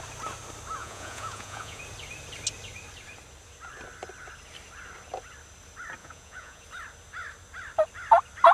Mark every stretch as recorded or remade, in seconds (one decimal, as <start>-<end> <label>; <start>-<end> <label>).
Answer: 0.0-0.8 recorded; 0.8-1.8 remade; 1.8-6.0 recorded; 6.0-6.6 remade; 6.6-8.5 recorded